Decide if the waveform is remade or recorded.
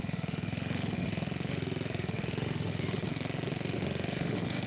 remade